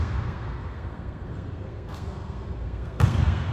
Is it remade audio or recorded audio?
remade